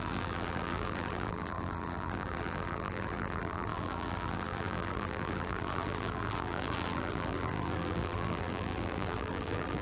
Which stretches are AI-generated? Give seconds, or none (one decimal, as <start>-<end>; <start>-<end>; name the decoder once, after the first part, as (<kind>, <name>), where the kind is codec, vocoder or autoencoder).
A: 0.0-9.8 (vocoder, BigVGAN v2)